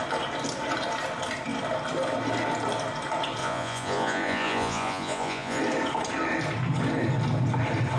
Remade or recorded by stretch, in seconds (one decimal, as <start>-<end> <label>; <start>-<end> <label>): 0.0-3.4 recorded; 3.4-5.6 remade; 5.6-8.0 recorded

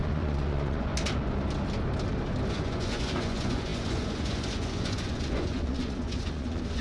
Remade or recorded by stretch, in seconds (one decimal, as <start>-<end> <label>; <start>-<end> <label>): 0.0-0.9 remade; 0.9-2.5 recorded; 2.5-6.8 remade

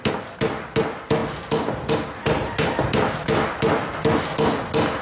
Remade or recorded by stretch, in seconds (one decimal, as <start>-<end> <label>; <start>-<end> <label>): 0.0-5.0 recorded

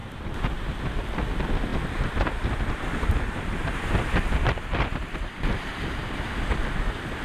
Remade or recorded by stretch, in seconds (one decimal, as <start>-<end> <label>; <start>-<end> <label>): 0.0-7.2 recorded

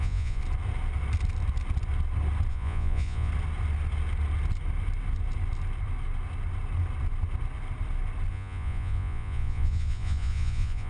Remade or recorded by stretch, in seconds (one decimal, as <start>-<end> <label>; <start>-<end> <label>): 0.0-0.4 remade; 0.4-2.5 recorded; 2.5-3.3 remade; 3.3-8.3 recorded; 8.3-10.9 remade

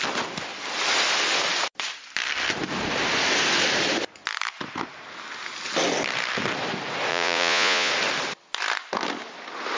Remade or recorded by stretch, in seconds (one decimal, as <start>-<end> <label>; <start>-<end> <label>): 0.0-7.1 recorded; 7.1-7.9 remade; 7.9-9.8 recorded

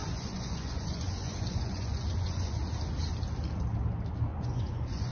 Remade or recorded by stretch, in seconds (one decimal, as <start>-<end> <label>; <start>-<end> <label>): 0.0-2.6 remade; 2.6-4.3 recorded; 4.3-5.1 remade

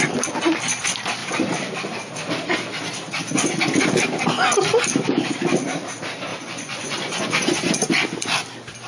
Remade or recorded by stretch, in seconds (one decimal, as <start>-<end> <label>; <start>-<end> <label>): 0.0-6.3 recorded; 6.3-7.7 remade; 7.7-8.9 recorded